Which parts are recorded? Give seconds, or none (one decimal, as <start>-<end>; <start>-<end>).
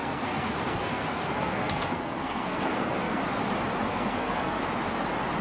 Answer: 3.2-3.9; 4.6-5.4